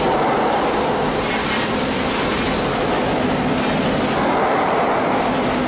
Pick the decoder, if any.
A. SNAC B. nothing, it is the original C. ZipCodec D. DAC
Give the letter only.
B